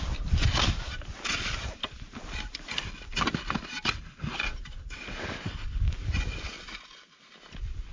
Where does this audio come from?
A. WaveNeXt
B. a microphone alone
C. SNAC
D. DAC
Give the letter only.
B